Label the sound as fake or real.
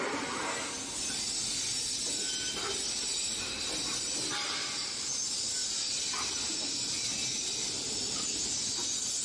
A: real